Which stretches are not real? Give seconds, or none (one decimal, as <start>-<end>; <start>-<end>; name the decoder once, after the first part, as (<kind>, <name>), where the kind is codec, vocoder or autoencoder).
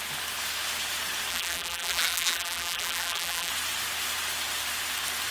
1.3-3.5 (vocoder, BigVGAN v2)